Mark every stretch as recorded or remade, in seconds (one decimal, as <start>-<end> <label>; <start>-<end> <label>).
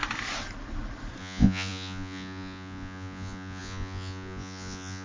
0.0-1.2 recorded; 1.2-5.0 remade